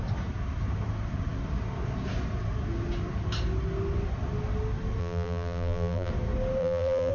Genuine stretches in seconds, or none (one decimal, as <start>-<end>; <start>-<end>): 0.0-5.0; 6.1-6.6